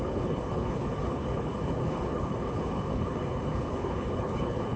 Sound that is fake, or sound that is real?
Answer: fake